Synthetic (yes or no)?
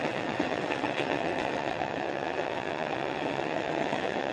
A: yes